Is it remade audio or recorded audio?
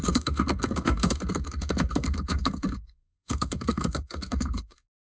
remade